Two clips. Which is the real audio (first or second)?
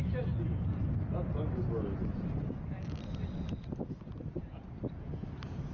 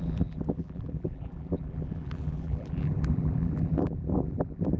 first